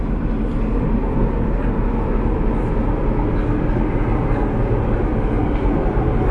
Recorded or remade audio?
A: recorded